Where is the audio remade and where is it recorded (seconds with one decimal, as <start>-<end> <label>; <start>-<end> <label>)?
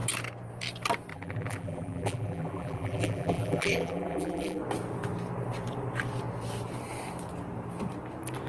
0.0-1.1 recorded; 1.1-4.6 remade; 4.6-8.5 recorded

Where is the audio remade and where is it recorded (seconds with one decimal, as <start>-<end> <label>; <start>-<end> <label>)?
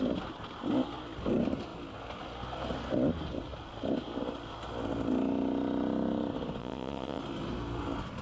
0.0-6.6 recorded; 6.6-7.2 remade; 7.2-8.2 recorded